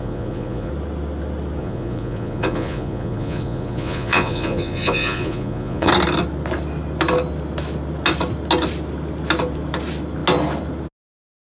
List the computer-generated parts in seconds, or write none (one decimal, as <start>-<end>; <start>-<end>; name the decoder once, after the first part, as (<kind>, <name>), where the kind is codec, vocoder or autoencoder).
0.0-0.7 (vocoder, Vocos); 1.6-5.9